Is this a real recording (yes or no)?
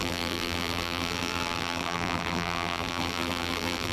no